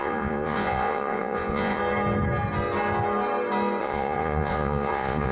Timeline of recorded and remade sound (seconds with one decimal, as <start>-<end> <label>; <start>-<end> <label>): 0.0-1.8 remade; 1.8-3.8 recorded; 3.8-5.3 remade